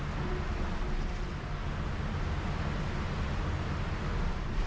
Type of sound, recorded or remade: recorded